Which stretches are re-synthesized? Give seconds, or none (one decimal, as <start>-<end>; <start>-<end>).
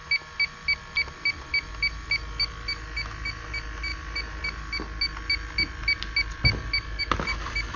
none